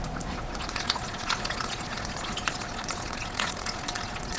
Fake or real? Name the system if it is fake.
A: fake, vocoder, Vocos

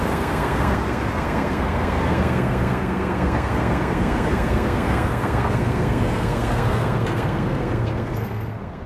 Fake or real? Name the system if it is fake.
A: fake, codec, SNAC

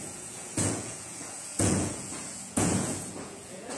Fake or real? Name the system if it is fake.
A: fake, vocoder, Vocos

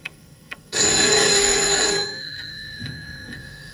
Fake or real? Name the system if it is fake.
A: fake, codec, SNAC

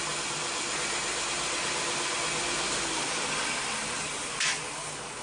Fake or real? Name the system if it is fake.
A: real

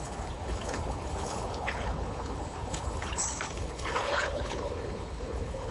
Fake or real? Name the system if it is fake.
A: fake, codec, HILCodec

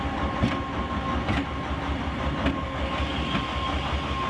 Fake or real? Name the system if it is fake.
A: real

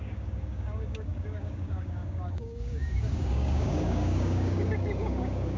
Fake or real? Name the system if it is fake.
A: fake, codec, DAC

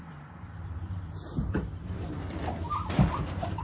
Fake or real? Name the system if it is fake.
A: fake, vocoder, BigVGAN v2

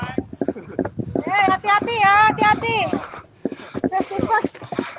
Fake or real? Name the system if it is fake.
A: real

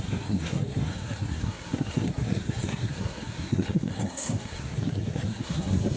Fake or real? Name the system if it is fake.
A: fake, codec, SNAC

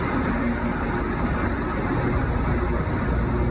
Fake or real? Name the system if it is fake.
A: real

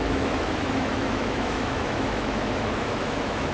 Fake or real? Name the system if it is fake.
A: fake, autoencoder, DAC-VAE